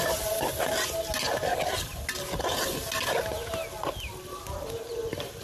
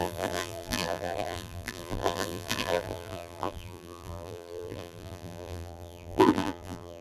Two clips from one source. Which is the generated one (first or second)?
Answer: second